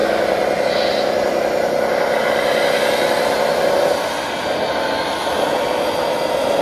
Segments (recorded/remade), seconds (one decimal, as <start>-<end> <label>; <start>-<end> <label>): 0.0-6.6 recorded